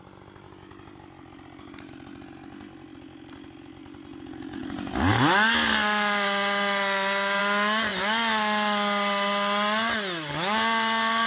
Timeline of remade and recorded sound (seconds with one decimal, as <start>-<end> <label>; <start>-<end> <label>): 0.0-11.3 recorded